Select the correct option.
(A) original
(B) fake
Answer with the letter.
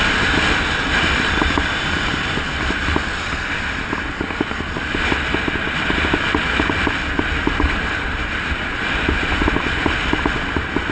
A